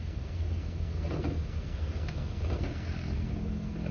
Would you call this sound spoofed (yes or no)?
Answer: yes